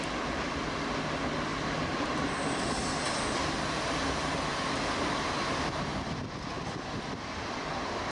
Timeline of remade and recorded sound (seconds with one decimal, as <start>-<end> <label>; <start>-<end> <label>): 0.0-1.5 recorded; 1.5-2.9 remade; 2.9-8.1 recorded